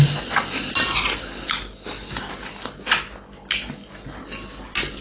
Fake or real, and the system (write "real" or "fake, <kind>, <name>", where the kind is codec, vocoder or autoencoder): real